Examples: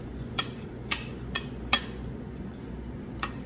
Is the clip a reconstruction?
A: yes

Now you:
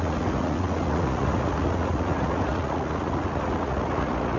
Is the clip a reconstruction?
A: yes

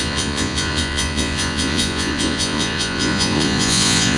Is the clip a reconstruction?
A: yes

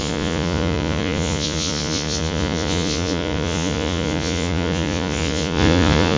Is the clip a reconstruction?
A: yes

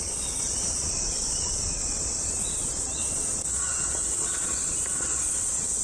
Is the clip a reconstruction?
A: yes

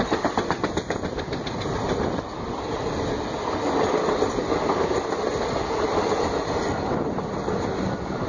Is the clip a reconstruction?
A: no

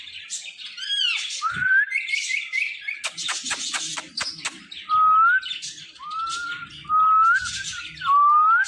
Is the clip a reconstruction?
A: no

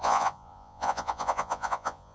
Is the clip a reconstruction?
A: yes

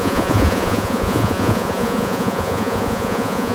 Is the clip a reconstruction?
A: yes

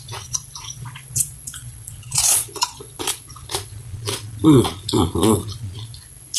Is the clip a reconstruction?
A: yes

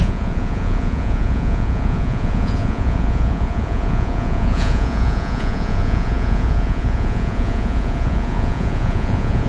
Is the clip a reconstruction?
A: yes